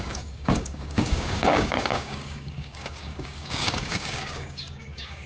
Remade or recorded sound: remade